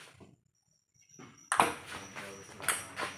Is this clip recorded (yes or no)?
yes